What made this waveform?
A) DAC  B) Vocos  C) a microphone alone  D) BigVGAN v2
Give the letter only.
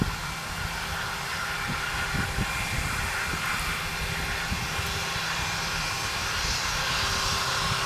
C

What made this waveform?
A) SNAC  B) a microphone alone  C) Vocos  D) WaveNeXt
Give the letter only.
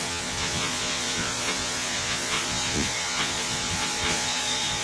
C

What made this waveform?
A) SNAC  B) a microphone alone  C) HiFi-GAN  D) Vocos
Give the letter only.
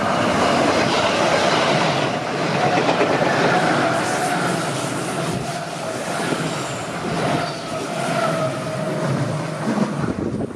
B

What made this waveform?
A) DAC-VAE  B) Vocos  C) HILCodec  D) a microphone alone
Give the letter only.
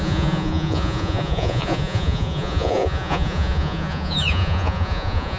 B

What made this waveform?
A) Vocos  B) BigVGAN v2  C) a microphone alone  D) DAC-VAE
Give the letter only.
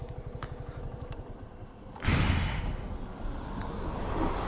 C